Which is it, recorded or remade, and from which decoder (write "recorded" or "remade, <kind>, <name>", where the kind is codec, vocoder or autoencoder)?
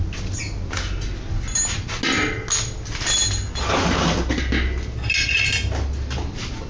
recorded